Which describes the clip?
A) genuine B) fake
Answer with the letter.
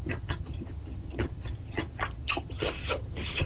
B